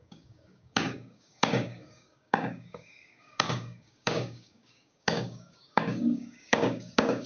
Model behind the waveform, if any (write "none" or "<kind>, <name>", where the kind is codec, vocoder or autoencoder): codec, DAC